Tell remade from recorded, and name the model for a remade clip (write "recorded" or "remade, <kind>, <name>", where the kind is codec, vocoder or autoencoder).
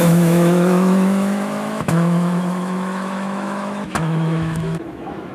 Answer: remade, autoencoder, DAC-VAE